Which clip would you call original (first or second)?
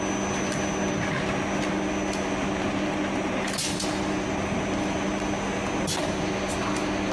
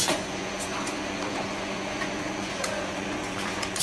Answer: first